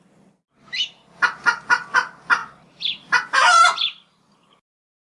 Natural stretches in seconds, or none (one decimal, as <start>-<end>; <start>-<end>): 0.0-5.1